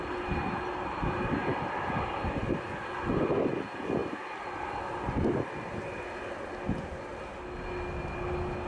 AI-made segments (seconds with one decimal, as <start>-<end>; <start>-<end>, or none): none